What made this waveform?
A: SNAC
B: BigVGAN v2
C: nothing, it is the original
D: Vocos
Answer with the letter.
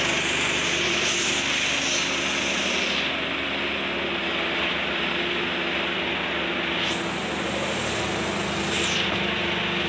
C